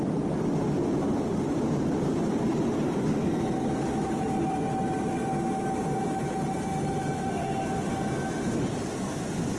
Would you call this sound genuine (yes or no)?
yes